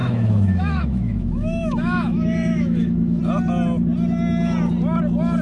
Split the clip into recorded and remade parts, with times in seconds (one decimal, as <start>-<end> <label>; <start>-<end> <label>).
0.0-3.2 remade; 3.2-5.4 recorded